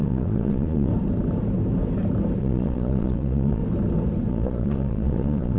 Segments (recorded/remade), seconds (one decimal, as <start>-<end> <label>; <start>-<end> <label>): 0.0-0.9 remade; 0.9-2.4 recorded; 2.4-3.6 remade; 3.6-4.3 recorded; 4.3-5.6 remade